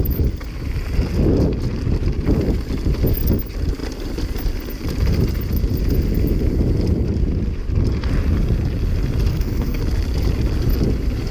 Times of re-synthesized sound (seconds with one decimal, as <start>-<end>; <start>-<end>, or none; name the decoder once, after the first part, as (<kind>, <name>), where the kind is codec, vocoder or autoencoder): 9.3-9.8 (codec, SNAC)